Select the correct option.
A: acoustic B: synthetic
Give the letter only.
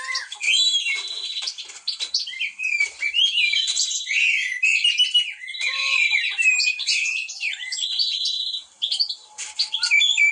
B